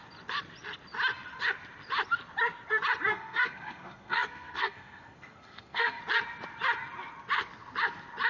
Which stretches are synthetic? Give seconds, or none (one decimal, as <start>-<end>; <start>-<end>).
3.1-6.0